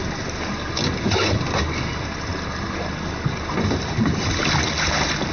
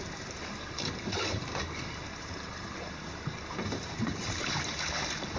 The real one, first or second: first